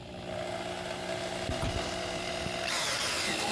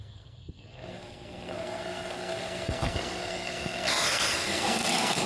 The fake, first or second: second